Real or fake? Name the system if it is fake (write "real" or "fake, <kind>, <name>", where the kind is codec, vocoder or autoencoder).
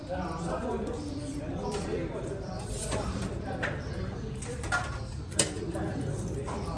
fake, vocoder, BigVGAN v2